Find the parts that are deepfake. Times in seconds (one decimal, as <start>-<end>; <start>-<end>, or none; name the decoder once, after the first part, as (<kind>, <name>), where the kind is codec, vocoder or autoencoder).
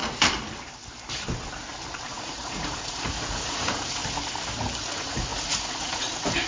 2.1-4.0 (vocoder, Vocos); 4.8-6.5